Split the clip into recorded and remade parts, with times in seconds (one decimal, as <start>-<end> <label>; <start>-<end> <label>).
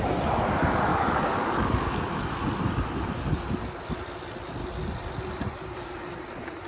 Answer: 0.0-0.9 recorded; 0.9-2.0 remade; 2.0-6.7 recorded